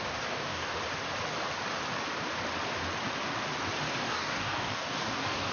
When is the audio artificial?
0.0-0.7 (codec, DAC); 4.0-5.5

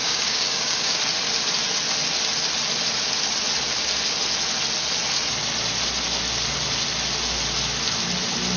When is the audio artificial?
0.0-1.0 (codec, DAC)

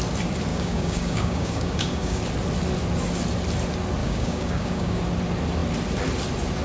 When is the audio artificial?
0.5-2.2 (codec, DAC); 4.0-5.0

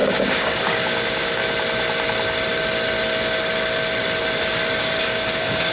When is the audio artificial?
0.0-1.4 (codec, DAC); 4.8-5.7

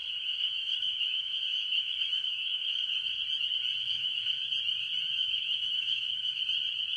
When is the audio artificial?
0.0-3.2 (codec, DAC); 3.8-4.4; 5.1-6.4